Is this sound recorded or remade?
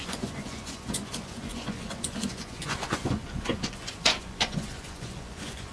remade